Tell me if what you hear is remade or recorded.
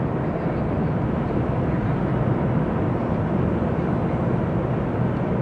recorded